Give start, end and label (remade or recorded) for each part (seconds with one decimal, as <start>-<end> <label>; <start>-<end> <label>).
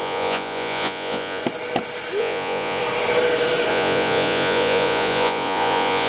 0.0-1.4 remade; 1.4-2.2 recorded; 2.2-2.8 remade; 2.8-3.7 recorded; 3.7-6.1 remade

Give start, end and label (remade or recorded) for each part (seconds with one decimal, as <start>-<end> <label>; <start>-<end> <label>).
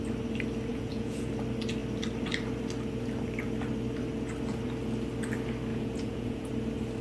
0.0-0.7 recorded; 0.7-1.3 remade; 1.3-5.7 recorded; 5.7-6.5 remade; 6.5-7.0 recorded